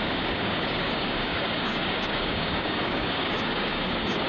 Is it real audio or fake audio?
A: fake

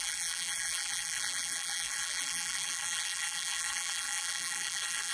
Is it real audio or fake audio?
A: fake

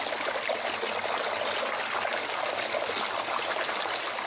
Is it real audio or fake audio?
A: real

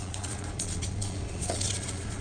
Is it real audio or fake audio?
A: fake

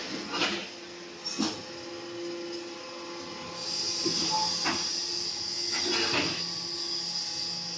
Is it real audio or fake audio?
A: real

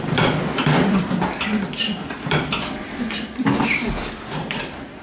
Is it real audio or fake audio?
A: fake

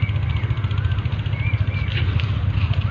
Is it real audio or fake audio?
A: real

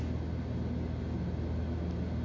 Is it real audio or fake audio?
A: real